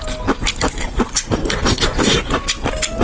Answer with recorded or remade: recorded